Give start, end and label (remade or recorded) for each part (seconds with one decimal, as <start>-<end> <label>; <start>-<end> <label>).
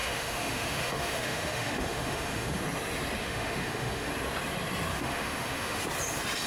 0.0-2.6 remade; 2.6-3.2 recorded; 3.2-4.1 remade; 4.1-4.9 recorded; 4.9-5.8 remade; 5.8-6.5 recorded